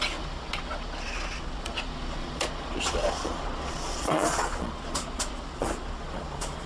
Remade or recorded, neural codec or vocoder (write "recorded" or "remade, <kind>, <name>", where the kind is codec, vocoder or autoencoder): remade, vocoder, Vocos